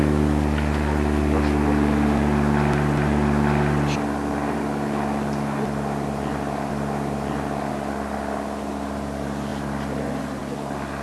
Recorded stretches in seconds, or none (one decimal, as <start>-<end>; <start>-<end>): 0.0-11.0